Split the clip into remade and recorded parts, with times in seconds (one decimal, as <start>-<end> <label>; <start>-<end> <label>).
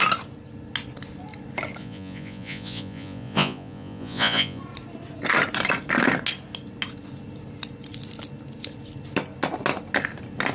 0.0-1.8 recorded; 1.8-4.6 remade; 4.6-10.5 recorded